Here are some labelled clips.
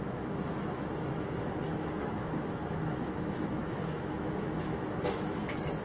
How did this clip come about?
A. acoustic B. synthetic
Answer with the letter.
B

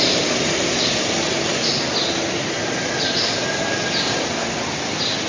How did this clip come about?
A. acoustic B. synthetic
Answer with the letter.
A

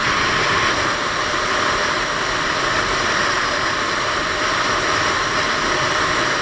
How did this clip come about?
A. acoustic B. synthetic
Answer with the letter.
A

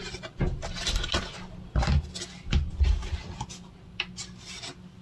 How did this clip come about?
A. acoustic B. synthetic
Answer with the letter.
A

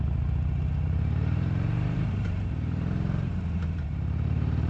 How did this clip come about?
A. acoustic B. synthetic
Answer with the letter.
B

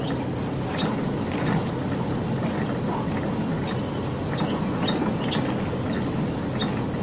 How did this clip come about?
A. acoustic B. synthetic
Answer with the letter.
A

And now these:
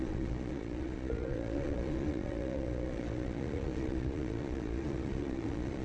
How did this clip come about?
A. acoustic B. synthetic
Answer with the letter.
B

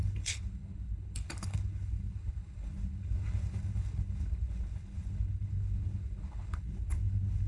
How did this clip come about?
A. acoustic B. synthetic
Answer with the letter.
B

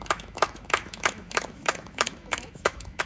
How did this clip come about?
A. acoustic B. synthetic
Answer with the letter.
B